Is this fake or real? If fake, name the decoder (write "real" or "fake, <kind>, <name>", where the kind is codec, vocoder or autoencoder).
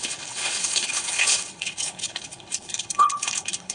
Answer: fake, codec, HILCodec